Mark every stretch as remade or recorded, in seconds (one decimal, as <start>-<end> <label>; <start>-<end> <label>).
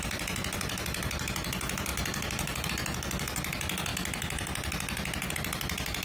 0.0-6.0 recorded